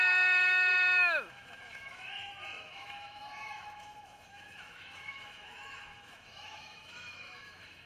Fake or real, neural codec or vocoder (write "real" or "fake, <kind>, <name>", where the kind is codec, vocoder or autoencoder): fake, autoencoder, DAC-VAE